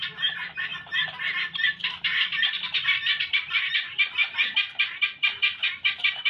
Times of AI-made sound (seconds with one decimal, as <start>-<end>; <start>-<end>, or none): none